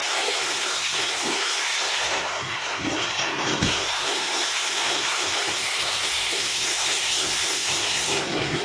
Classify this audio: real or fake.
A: fake